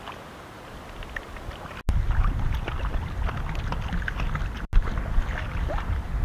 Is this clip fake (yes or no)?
no